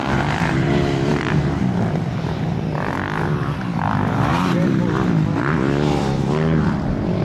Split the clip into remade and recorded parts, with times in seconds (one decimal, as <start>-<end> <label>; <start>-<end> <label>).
0.0-0.7 remade; 0.7-1.1 recorded; 1.1-2.4 remade; 2.4-7.2 recorded